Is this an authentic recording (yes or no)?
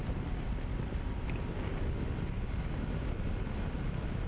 yes